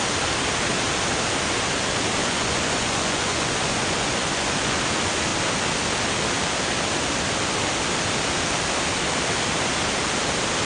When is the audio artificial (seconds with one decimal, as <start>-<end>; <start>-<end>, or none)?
2.2-4.8